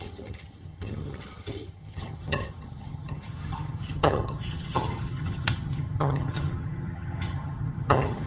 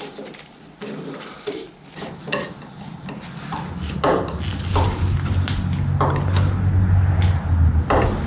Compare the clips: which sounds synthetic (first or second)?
first